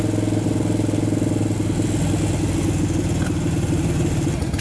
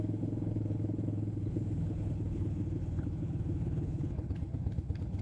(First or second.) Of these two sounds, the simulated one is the second